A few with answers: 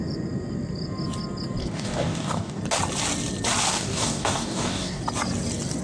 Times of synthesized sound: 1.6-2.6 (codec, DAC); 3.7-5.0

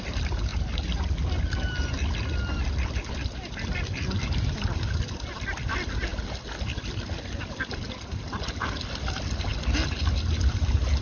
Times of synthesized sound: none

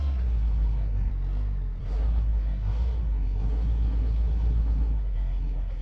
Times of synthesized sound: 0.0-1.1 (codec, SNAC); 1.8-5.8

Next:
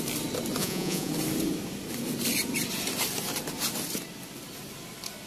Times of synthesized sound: 0.6-1.1 (vocoder, Vocos)

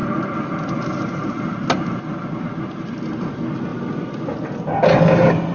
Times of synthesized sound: none

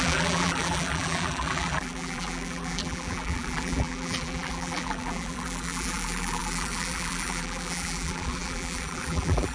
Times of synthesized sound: 0.0-9.5 (vocoder, BigVGAN v2)

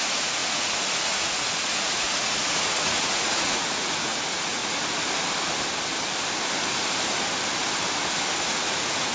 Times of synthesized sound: 0.0-4.6 (vocoder, Vocos); 8.4-9.1

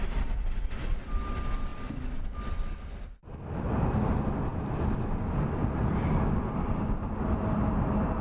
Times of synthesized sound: none